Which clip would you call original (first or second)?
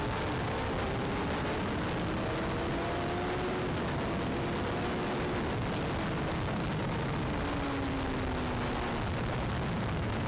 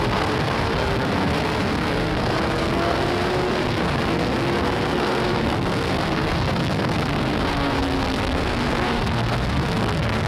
first